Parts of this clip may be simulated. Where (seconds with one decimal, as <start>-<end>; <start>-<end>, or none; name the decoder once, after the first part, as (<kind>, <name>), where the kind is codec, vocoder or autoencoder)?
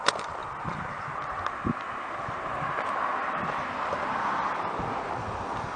none